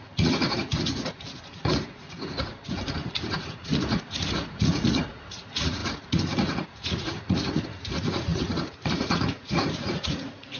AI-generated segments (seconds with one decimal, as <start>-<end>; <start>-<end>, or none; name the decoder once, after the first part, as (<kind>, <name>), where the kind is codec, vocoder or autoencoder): 0.0-10.6 (vocoder, Vocos)